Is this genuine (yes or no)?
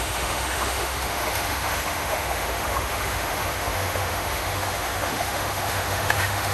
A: no